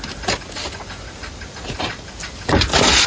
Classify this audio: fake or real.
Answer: real